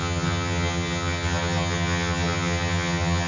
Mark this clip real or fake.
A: fake